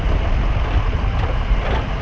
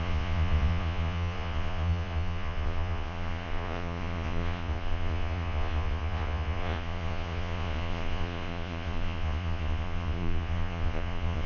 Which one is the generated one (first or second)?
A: second